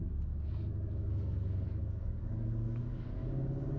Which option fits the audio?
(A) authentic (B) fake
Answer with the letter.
B